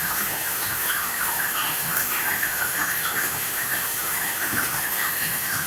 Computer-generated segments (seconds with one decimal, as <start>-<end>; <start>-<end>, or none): 0.0-5.7